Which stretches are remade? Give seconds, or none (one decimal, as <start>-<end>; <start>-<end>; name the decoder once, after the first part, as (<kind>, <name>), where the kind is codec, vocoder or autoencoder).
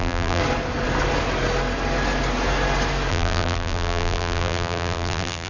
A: 0.0-0.4 (vocoder, BigVGAN v2); 3.1-5.5